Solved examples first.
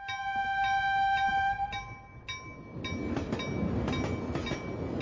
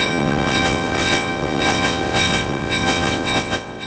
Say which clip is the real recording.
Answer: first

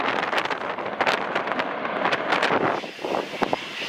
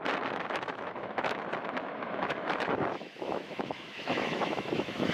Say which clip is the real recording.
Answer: first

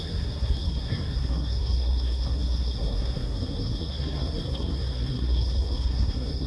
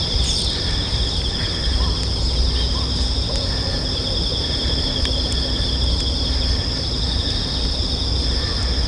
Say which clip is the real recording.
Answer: second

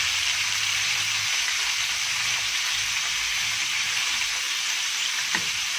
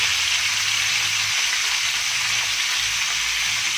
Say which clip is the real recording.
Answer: second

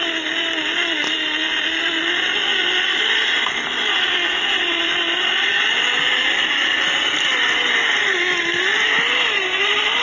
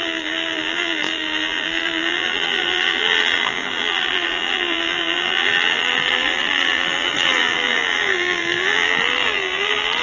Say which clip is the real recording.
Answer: first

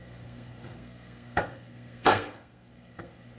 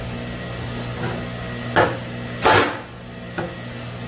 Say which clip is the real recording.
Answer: second